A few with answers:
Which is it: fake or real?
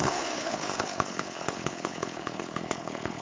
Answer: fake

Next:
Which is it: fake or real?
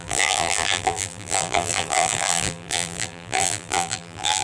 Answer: fake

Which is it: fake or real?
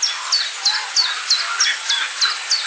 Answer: real